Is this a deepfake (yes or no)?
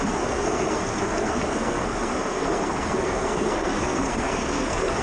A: yes